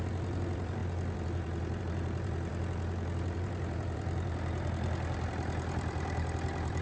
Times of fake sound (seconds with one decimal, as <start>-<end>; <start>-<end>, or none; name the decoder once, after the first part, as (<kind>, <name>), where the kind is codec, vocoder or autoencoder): 0.0-6.8 (vocoder, BigVGAN v2)